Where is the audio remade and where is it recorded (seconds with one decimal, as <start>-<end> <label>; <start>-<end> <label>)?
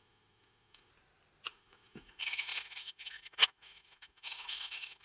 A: 0.0-0.9 remade; 0.9-1.5 recorded; 1.5-5.0 remade